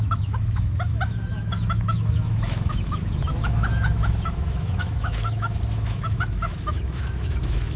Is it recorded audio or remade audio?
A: remade